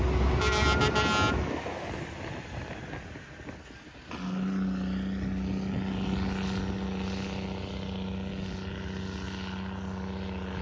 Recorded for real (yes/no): yes